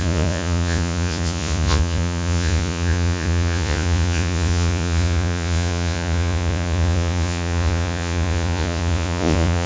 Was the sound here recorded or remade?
remade